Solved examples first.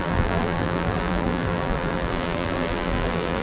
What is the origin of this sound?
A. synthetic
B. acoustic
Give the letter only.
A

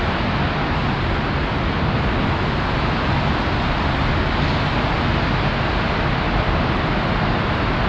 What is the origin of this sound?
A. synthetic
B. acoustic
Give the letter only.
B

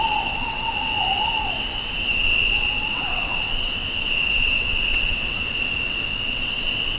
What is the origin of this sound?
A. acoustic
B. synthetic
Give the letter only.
B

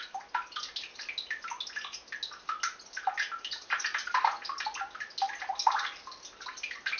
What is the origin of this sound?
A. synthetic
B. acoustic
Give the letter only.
B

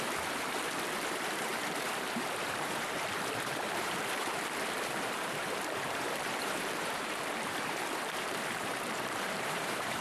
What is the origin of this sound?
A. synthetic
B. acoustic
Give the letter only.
A